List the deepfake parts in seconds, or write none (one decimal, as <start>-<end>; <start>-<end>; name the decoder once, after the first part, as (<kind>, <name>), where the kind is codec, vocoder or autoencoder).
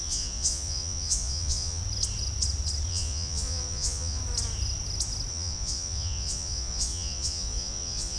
0.0-1.8 (vocoder, Vocos); 2.9-4.2; 5.3-8.2